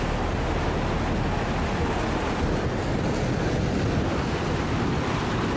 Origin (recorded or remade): recorded